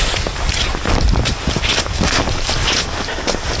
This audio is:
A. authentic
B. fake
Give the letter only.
A